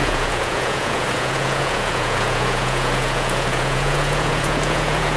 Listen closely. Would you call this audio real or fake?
fake